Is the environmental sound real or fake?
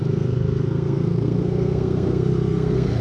fake